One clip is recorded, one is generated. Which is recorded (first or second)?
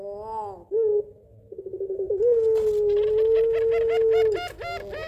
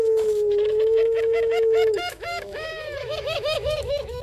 first